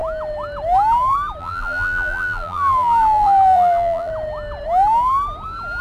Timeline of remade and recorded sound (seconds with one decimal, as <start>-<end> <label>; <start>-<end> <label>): 0.0-1.4 recorded; 1.4-4.1 remade; 4.1-5.8 recorded